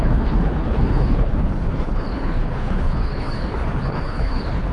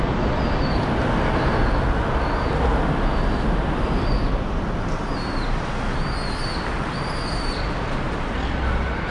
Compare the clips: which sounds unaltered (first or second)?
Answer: second